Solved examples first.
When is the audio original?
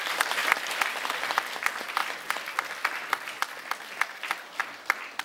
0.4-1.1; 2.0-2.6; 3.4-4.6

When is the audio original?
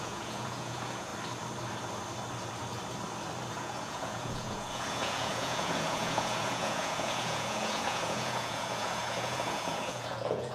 1.1-3.5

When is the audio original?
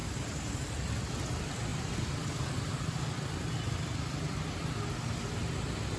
0.7-6.0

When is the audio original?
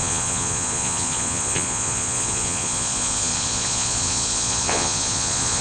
none